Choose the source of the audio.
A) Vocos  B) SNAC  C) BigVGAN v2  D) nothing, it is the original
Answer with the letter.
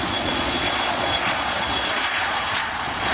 A